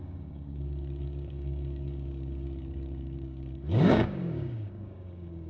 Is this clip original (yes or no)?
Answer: no